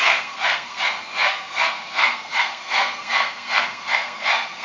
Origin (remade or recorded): remade